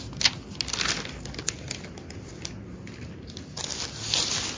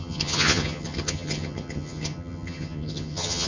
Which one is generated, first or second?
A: second